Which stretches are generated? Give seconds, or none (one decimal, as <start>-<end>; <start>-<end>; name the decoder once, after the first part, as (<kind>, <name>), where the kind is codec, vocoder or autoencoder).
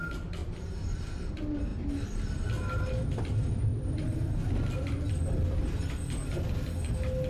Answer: 0.4-1.0 (vocoder, BigVGAN v2)